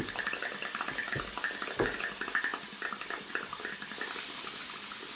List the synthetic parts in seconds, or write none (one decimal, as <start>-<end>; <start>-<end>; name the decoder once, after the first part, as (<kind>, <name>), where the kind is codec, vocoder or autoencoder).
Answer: none

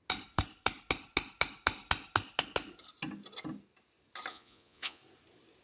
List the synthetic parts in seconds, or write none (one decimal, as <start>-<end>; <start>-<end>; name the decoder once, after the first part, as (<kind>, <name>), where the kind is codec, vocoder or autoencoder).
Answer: 4.3-5.0 (vocoder, Vocos)